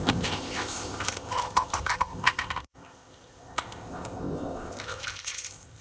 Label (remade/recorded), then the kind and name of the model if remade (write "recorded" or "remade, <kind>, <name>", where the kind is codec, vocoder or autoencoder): remade, codec, ZipCodec